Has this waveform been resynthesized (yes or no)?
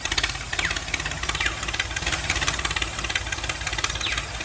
no